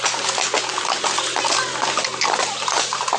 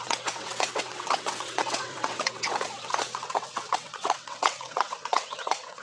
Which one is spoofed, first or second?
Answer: second